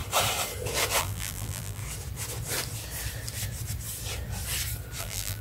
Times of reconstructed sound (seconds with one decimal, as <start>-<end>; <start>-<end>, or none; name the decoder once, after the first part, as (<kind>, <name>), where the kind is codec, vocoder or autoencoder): 1.0-1.8 (vocoder, BigVGAN v2); 5.0-5.4